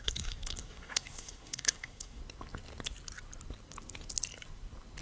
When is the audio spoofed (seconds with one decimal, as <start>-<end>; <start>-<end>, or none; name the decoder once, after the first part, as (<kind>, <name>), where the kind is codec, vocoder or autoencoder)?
0.0-2.2 (codec, SNAC)